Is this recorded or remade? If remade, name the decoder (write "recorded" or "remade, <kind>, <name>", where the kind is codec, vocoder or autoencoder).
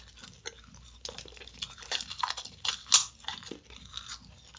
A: recorded